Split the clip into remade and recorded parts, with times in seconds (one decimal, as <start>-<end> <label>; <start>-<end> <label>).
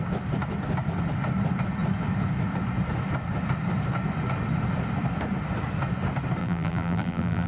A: 0.0-6.4 recorded; 6.4-7.5 remade